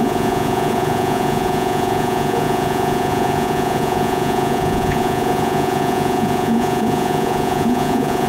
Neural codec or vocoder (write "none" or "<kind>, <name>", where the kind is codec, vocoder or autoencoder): vocoder, Vocos